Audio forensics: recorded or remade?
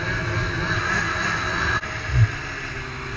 recorded